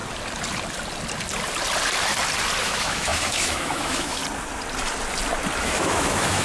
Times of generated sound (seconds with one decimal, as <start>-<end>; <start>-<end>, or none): 2.6-4.2; 5.6-6.4

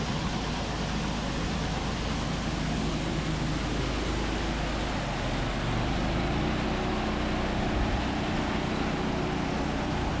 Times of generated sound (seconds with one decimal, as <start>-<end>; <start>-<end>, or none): none

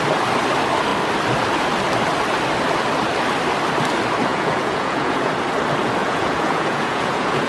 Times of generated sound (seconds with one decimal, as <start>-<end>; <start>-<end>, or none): 4.3-5.3; 6.0-7.5